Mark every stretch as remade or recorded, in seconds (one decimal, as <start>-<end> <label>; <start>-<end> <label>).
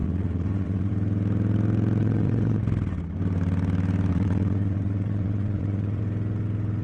0.0-0.9 remade; 0.9-2.0 recorded; 2.0-2.6 remade; 2.6-4.1 recorded; 4.1-6.0 remade; 6.0-6.8 recorded